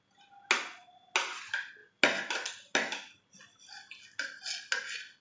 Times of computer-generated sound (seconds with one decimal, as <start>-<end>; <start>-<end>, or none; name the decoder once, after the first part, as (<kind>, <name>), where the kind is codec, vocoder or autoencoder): none